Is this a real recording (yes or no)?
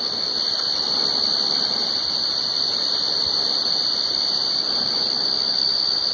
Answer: yes